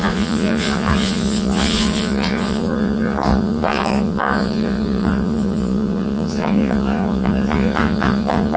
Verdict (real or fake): fake